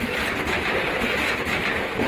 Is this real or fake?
real